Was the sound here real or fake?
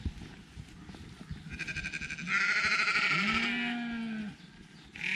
real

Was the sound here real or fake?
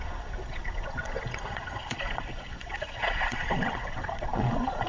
fake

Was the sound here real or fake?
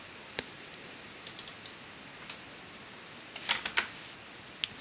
real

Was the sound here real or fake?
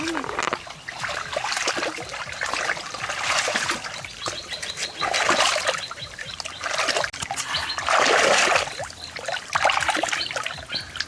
real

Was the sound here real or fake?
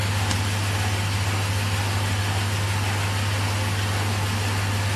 real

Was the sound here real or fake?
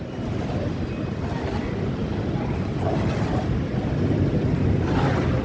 real